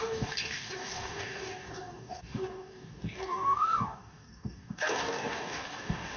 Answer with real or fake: fake